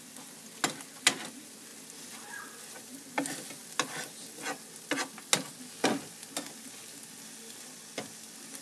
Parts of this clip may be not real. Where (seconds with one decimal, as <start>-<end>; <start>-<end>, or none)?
none